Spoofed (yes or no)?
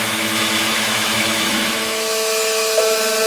yes